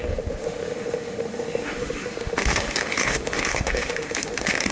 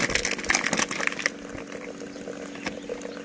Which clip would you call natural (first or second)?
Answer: second